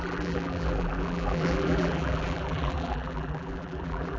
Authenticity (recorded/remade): remade